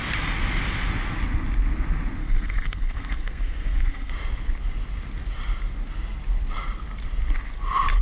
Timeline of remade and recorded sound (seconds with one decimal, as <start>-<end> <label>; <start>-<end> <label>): 0.0-2.2 recorded; 2.2-4.1 remade; 4.1-8.0 recorded